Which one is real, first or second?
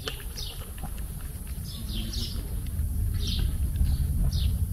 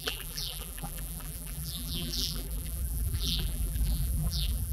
first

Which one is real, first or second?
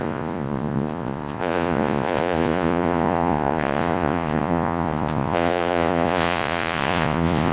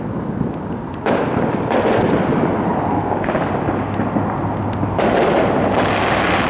second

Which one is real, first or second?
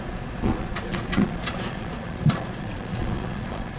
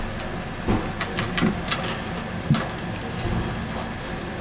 second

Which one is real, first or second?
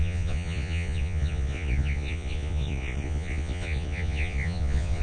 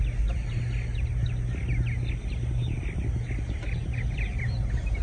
second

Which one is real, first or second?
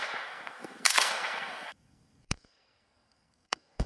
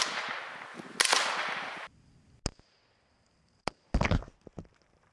second